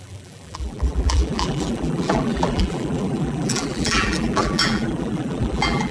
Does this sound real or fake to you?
fake